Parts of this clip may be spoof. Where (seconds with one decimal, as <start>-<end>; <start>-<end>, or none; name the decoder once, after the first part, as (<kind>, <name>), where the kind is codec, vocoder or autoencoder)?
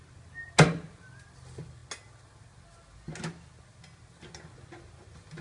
none